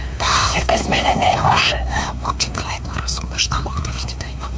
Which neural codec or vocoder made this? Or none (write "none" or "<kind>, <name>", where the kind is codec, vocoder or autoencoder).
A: codec, SNAC